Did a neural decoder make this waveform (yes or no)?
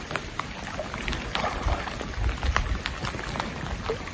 no